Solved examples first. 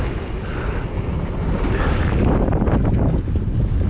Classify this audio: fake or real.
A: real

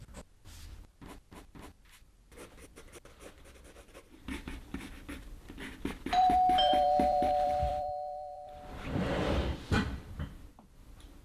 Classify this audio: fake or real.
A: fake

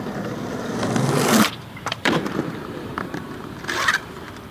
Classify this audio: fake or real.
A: fake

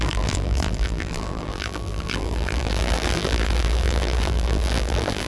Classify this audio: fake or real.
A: fake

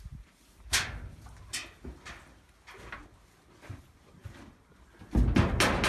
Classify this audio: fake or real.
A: real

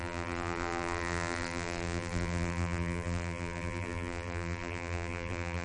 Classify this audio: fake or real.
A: fake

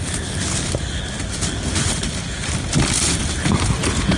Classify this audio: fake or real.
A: real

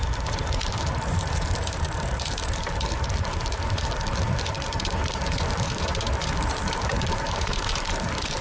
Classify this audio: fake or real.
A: fake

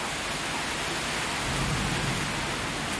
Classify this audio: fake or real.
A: real